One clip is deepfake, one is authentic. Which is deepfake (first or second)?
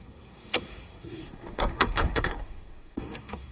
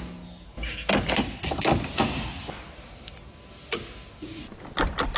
first